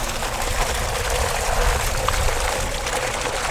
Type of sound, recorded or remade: recorded